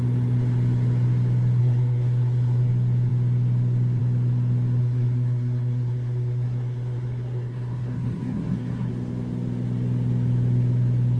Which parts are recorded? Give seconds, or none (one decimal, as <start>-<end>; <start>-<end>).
0.0-1.6; 2.7-4.8; 8.9-11.2